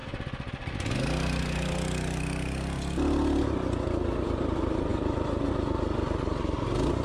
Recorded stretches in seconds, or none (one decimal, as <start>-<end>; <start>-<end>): 0.0-7.0